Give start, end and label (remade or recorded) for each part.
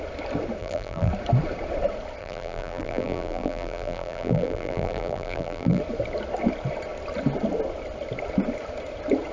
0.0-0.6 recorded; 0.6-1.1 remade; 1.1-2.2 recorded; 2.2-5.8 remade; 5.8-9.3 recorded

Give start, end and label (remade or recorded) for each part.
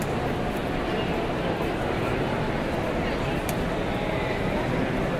0.0-5.2 recorded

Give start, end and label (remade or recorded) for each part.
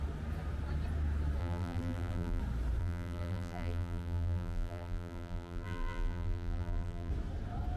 0.0-1.4 recorded; 1.4-2.4 remade; 2.4-2.8 recorded; 2.8-7.1 remade; 7.1-7.8 recorded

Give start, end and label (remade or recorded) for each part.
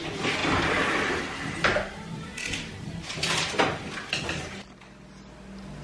0.0-0.4 recorded; 0.4-1.2 remade; 1.2-5.8 recorded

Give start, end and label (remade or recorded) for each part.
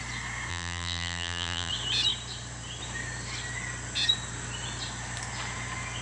0.0-0.5 recorded; 0.5-1.7 remade; 1.7-6.0 recorded